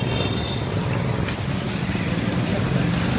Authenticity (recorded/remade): recorded